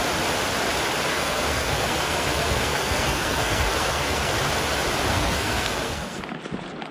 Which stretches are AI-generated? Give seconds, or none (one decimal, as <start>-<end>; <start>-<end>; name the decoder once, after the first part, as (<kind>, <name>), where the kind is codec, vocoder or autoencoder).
1.1-4.4 (codec, SNAC); 5.1-6.2